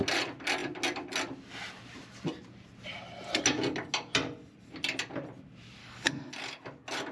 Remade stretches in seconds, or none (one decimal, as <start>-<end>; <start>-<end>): 5.8-6.3